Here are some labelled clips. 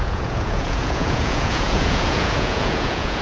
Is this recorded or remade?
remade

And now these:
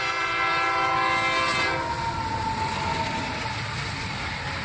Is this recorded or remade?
recorded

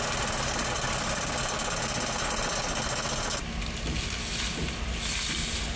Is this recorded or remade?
recorded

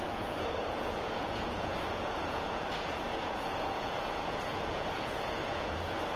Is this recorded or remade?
remade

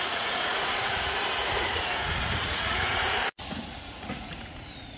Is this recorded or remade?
remade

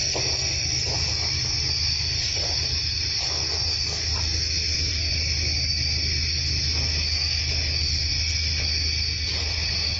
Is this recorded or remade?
recorded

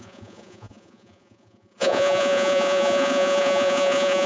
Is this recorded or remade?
remade